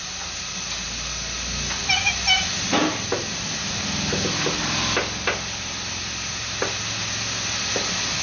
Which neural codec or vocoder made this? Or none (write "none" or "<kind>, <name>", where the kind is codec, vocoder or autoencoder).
none